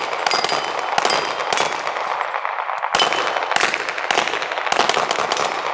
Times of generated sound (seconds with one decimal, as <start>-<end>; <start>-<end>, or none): none